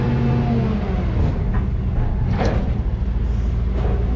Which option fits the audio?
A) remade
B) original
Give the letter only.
B